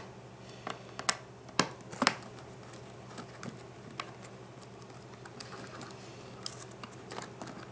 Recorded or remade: recorded